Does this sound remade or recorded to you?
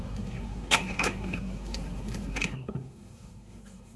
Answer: remade